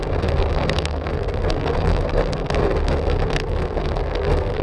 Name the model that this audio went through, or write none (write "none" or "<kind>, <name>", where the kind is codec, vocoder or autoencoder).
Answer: codec, SNAC